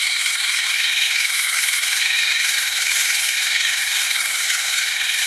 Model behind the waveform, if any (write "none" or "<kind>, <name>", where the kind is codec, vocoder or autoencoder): codec, SNAC